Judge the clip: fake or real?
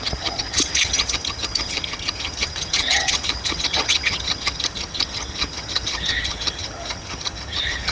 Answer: fake